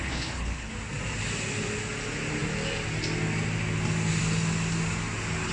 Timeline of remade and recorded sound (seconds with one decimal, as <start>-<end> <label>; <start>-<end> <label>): 0.0-0.7 remade; 0.7-5.5 recorded